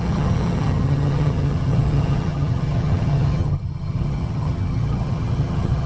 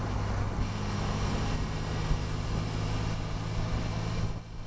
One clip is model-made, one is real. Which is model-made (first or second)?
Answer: first